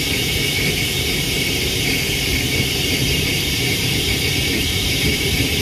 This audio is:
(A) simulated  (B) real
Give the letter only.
A